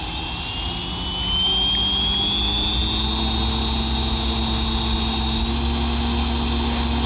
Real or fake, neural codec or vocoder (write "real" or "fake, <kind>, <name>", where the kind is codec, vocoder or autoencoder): real